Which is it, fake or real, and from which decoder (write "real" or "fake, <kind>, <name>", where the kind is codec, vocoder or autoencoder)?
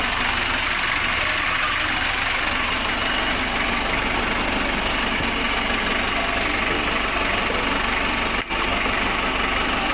real